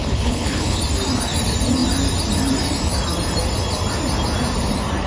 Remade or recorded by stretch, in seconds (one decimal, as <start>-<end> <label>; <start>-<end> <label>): 0.0-0.8 remade; 0.8-5.1 recorded